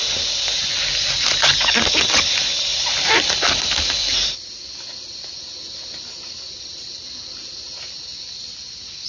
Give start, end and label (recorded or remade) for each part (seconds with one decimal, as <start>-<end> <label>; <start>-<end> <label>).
0.0-9.1 recorded